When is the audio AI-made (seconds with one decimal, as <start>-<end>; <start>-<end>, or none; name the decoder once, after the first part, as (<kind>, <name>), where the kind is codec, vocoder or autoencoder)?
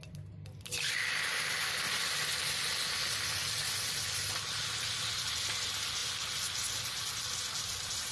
none